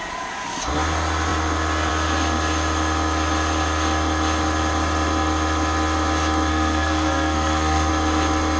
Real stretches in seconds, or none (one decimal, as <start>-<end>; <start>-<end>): 0.0-6.5; 7.9-8.6